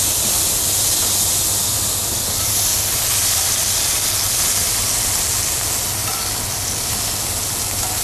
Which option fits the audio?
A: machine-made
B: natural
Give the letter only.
B